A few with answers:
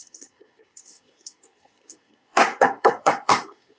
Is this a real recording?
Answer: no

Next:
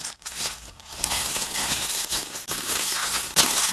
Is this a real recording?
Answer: no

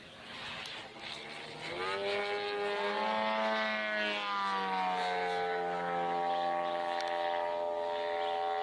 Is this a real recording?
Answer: yes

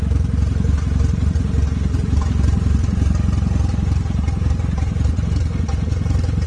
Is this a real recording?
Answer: yes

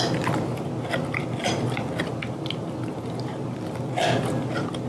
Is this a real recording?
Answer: yes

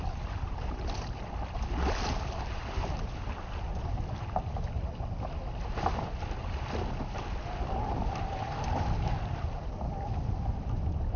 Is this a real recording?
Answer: yes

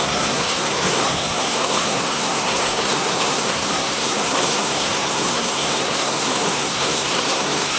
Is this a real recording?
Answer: no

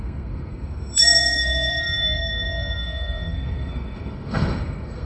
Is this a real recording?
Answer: no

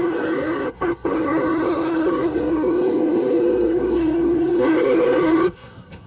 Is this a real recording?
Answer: no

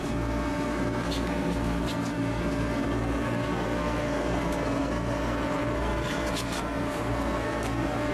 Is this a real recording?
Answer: no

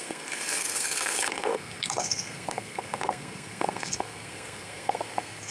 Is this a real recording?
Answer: no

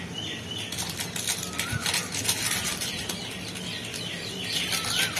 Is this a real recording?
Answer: yes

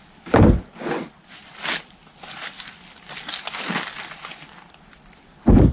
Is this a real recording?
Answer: yes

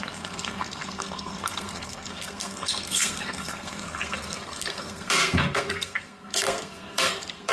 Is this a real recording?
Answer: no